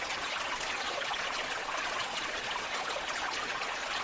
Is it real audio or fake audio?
fake